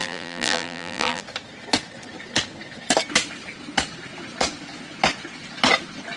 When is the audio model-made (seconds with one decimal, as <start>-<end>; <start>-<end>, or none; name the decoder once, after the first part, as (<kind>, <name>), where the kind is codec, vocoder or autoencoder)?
0.0-1.2 (vocoder, BigVGAN v2)

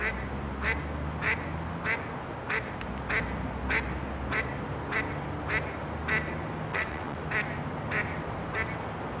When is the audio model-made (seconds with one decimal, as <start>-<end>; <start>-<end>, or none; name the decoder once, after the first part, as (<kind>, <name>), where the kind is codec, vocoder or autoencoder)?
6.7-7.2 (vocoder, WaveNeXt)